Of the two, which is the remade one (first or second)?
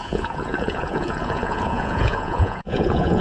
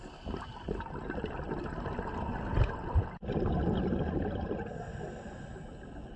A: first